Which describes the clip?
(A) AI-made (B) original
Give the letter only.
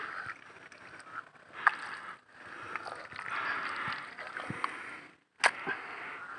B